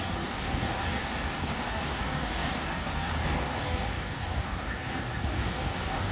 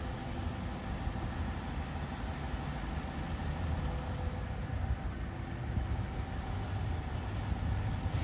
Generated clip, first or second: first